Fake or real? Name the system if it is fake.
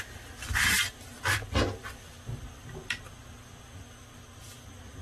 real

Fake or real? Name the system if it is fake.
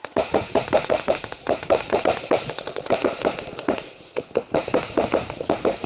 fake, vocoder, Vocos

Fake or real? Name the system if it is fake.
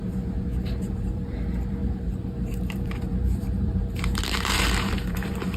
fake, vocoder, BigVGAN v2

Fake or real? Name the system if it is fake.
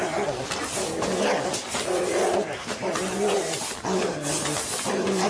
real